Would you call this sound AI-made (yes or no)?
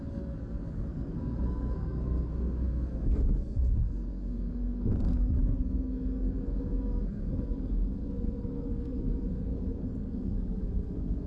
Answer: yes